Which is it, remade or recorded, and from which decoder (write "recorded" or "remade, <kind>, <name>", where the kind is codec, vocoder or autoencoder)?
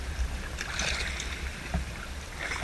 recorded